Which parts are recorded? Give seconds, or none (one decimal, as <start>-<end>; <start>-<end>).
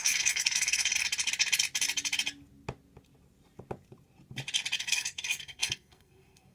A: 0.9-4.8